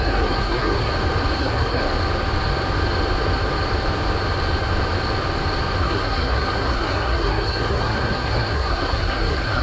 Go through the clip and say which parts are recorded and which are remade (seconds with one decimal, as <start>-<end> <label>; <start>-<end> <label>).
0.0-0.9 remade; 0.9-1.4 recorded; 1.4-1.8 remade; 1.8-5.8 recorded; 5.8-9.6 remade